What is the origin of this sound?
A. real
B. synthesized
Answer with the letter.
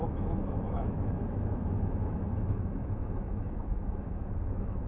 B